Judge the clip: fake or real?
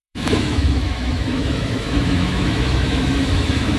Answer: fake